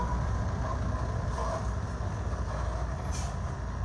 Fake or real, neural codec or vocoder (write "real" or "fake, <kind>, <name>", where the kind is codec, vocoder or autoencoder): real